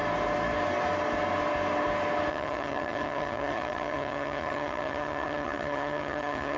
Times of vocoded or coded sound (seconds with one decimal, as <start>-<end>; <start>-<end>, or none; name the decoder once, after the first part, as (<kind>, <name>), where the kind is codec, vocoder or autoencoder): 2.3-6.6 (vocoder, HiFi-GAN)